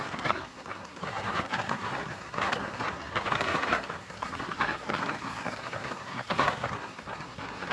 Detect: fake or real fake